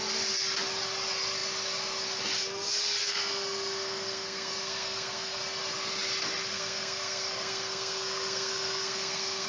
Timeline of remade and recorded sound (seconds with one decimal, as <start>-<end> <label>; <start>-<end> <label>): 0.0-3.0 recorded; 3.0-5.4 remade; 5.4-6.5 recorded; 6.5-9.5 remade